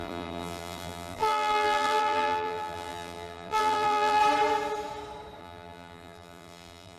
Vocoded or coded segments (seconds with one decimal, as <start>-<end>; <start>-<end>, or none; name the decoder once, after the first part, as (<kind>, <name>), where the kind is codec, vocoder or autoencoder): 0.0-4.2 (vocoder, BigVGAN v2); 5.4-7.0